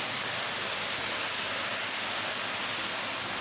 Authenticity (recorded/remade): recorded